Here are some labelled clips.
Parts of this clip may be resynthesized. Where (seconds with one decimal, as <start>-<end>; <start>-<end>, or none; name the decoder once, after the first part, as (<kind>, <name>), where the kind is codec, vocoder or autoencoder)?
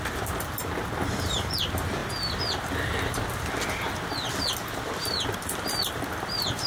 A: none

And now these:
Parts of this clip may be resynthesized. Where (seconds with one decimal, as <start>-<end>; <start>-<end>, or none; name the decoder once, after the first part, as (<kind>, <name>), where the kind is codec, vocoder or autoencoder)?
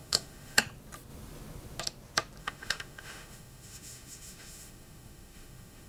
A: 0.0-0.6 (autoencoder, DAC-VAE); 2.4-5.9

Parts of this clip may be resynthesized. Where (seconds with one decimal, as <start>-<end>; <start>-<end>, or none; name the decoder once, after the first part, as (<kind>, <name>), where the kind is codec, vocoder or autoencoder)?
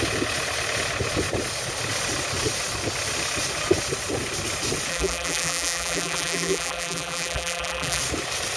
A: 4.9-8.0 (vocoder, BigVGAN v2)